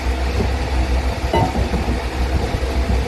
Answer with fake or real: real